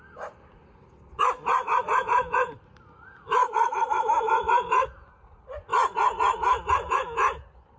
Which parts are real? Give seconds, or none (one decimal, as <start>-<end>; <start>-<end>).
0.0-7.8